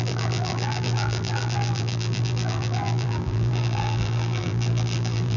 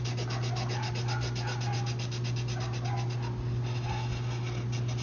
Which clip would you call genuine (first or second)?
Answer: second